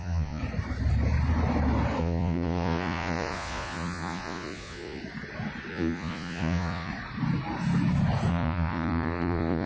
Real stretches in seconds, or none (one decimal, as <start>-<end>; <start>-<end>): 0.4-2.0; 5.0-5.7; 6.9-8.3